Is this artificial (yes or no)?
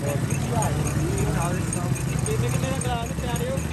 no